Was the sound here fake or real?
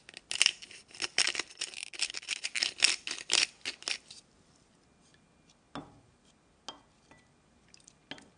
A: real